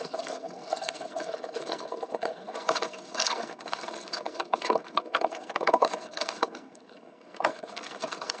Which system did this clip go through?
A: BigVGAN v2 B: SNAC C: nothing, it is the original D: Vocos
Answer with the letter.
B